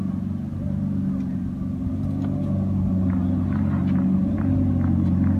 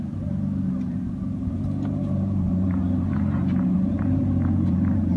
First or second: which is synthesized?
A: second